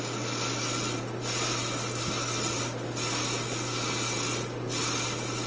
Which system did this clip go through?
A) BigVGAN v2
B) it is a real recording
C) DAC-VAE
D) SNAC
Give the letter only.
B